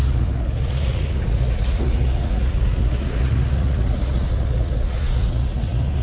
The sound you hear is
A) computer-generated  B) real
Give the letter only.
A